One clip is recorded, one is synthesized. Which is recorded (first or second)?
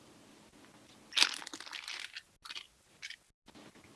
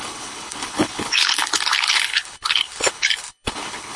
first